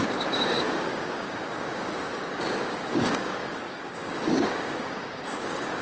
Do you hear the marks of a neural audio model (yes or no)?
yes